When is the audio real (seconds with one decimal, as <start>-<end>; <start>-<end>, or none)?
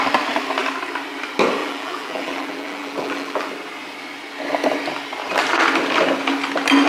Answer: 0.0-1.6; 3.5-6.9